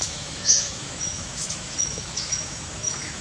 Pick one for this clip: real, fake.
fake